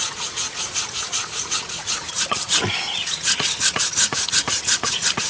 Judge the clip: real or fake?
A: fake